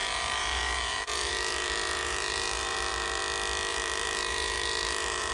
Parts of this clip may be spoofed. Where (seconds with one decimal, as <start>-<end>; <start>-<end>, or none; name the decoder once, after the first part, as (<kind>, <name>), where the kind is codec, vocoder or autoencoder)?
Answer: 0.0-3.2 (vocoder, BigVGAN v2); 3.7-5.3